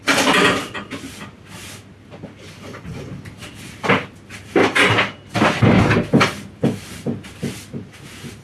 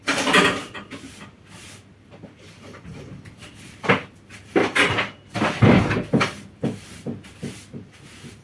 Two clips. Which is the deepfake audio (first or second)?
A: second